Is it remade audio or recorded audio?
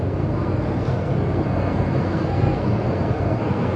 remade